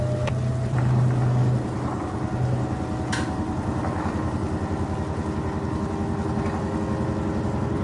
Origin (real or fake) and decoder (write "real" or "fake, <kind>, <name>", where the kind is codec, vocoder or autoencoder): real